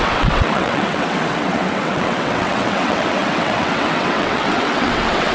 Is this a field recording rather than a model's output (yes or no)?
no